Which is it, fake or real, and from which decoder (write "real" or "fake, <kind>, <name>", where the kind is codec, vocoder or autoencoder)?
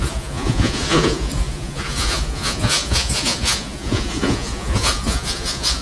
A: fake, vocoder, Vocos